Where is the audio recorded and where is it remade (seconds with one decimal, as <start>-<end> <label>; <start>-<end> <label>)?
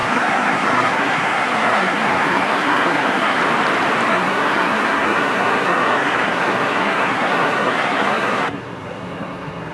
0.0-3.4 remade; 3.4-4.1 recorded; 4.1-9.7 remade